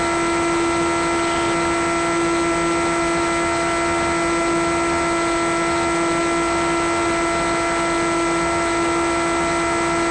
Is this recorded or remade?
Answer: recorded